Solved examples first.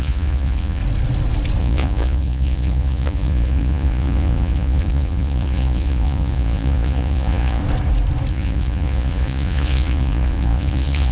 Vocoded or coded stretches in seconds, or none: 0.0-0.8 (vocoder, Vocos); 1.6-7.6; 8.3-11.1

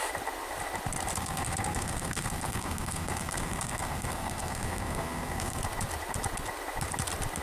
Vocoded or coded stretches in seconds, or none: 1.2-5.6 (codec, SNAC)